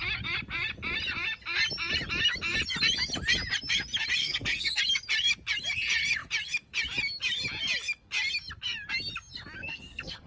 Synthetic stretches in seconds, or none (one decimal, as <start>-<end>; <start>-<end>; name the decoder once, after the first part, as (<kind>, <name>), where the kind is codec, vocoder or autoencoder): 4.2-4.8 (codec, SNAC); 9.6-10.3